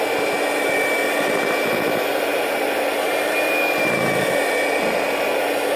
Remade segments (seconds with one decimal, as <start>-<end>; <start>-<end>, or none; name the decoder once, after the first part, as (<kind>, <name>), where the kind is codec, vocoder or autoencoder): none